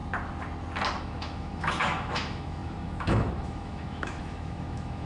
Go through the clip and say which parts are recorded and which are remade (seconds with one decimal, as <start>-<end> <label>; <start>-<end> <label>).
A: 0.0-1.0 recorded; 1.0-5.1 remade